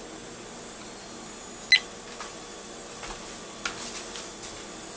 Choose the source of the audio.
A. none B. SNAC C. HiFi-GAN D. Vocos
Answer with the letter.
A